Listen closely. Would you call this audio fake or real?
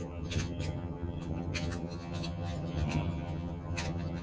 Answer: fake